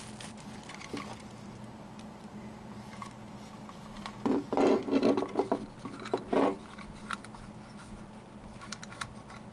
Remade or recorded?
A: recorded